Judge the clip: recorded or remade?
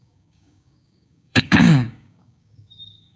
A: remade